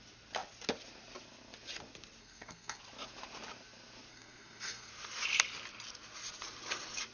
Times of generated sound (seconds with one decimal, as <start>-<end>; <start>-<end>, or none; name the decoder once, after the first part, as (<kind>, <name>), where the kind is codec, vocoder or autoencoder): 2.2-2.8 (codec, SNAC); 4.1-4.9